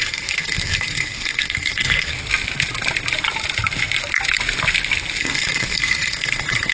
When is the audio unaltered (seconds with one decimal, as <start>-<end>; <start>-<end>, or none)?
2.1-5.2